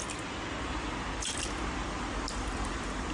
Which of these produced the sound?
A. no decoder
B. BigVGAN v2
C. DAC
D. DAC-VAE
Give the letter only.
B